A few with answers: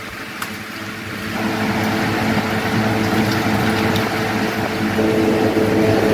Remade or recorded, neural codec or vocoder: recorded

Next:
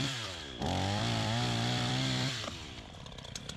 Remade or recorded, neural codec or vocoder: remade, vocoder, BigVGAN v2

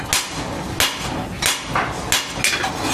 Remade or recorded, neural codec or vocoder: recorded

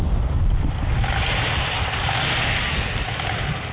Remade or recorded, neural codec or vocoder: recorded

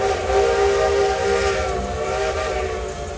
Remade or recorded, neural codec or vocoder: recorded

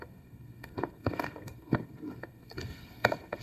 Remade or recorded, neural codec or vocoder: remade, codec, SNAC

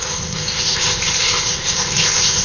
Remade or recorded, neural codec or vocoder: remade, codec, ZipCodec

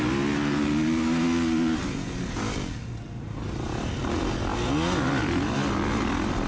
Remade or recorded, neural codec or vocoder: recorded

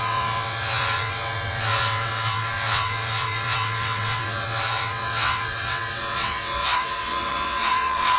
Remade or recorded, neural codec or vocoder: remade, vocoder, WaveNeXt